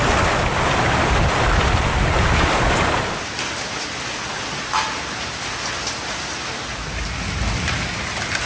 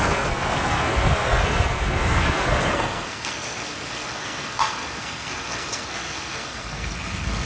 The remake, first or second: second